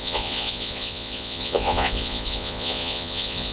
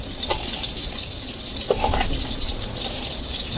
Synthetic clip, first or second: first